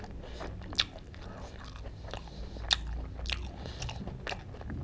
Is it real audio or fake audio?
real